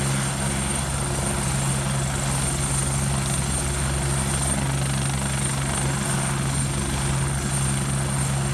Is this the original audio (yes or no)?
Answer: yes